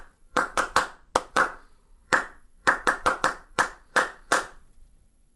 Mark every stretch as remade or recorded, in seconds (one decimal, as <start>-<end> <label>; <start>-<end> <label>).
0.0-0.8 remade; 0.8-1.3 recorded; 1.3-5.4 remade